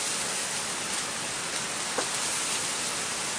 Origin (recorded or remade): recorded